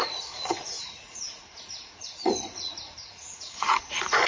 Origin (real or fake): fake